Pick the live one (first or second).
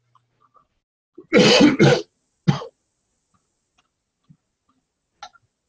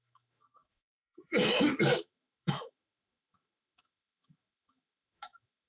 first